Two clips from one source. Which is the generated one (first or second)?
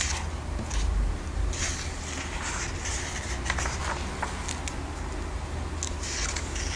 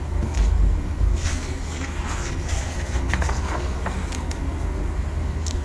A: second